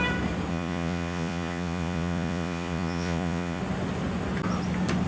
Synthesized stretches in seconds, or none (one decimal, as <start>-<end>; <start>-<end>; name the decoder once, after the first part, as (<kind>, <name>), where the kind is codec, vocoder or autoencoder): 0.5-3.6 (vocoder, Vocos)